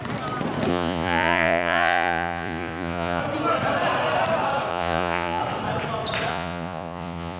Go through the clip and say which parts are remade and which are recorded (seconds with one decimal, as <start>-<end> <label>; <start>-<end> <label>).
0.0-0.7 recorded; 0.7-3.2 remade; 3.2-4.7 recorded; 4.7-5.4 remade; 5.4-6.3 recorded; 6.3-7.4 remade